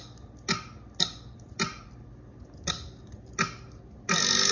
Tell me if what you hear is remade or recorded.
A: recorded